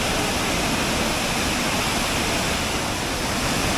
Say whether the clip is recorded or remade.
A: recorded